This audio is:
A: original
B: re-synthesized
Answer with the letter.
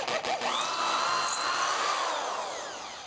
A